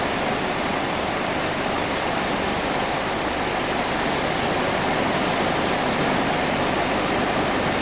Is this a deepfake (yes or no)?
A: yes